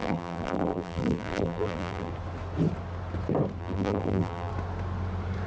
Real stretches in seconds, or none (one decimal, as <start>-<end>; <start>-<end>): 2.1-3.6; 4.5-5.5